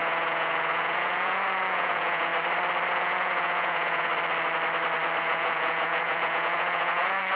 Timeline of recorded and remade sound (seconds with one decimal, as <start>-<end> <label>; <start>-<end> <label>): 0.0-2.3 remade; 2.3-2.9 recorded; 2.9-4.1 remade; 4.1-5.2 recorded; 5.2-7.4 remade